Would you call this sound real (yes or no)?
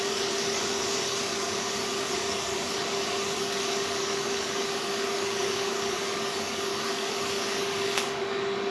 no